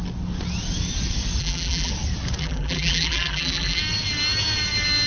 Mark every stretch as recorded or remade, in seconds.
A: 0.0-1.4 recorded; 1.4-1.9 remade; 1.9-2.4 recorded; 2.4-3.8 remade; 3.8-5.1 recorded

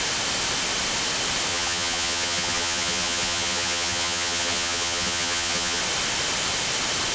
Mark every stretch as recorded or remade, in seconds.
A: 0.0-1.5 recorded; 1.5-5.8 remade; 5.8-7.1 recorded

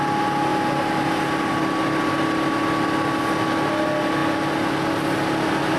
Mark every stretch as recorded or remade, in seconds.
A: 0.0-5.8 recorded

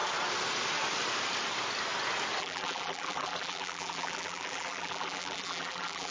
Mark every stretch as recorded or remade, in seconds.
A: 0.0-2.4 recorded; 2.4-6.1 remade

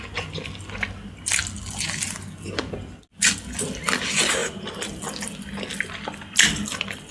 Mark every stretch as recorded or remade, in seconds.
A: 0.0-4.4 recorded; 4.4-5.0 remade; 5.0-7.1 recorded

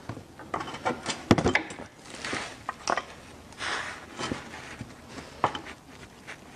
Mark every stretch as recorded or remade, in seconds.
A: 0.0-6.6 recorded

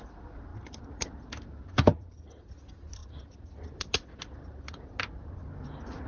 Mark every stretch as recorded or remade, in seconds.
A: 0.0-1.9 recorded; 1.9-2.5 remade; 2.5-3.0 recorded; 3.0-4.2 remade; 4.2-6.1 recorded